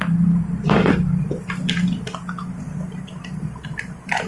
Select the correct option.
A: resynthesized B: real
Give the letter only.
A